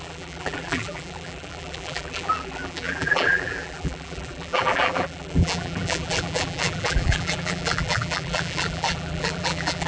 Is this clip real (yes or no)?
no